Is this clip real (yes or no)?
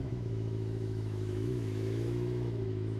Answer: no